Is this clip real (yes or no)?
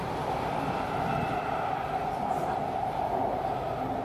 no